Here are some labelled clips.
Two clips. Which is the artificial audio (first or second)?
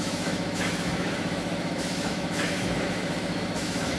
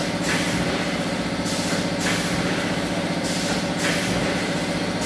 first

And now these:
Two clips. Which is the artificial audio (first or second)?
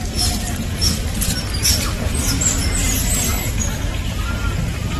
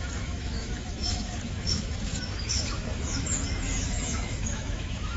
second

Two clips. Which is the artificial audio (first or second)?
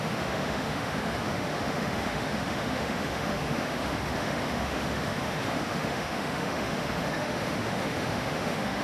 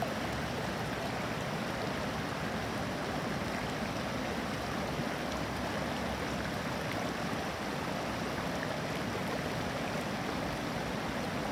first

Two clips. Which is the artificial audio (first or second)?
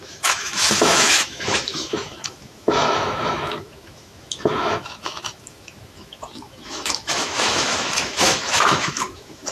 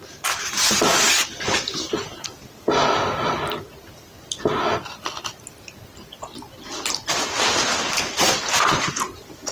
first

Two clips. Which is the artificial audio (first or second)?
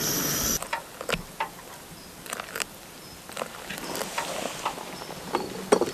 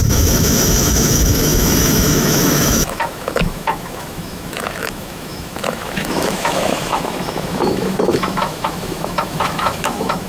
second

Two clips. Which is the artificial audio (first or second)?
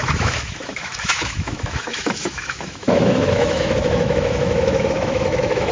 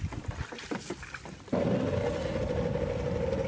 first